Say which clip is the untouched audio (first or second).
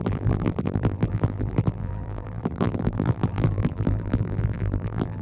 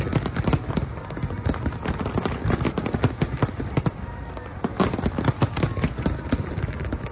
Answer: second